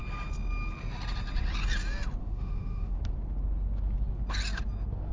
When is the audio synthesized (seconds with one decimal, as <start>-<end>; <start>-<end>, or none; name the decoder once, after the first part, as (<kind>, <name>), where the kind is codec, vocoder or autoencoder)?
2.2-3.0 (autoencoder, DAC-VAE)